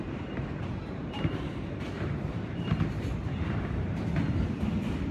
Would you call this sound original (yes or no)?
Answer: no